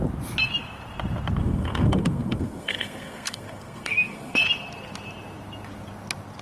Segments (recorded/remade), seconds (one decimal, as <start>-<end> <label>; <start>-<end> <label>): 0.0-1.4 recorded; 1.4-4.4 remade; 4.4-6.4 recorded